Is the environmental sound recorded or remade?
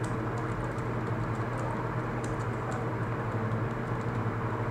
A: recorded